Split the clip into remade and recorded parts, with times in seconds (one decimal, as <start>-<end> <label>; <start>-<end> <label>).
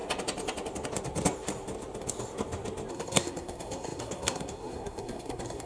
0.0-2.9 recorded; 2.9-5.7 remade